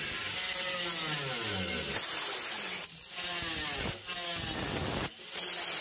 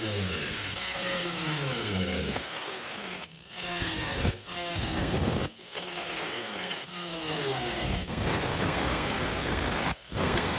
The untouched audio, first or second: first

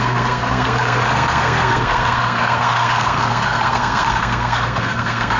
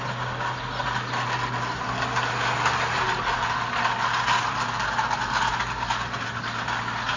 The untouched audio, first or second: second